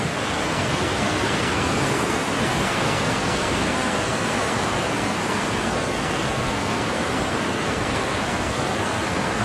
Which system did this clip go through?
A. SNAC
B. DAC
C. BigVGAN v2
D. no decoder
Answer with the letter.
A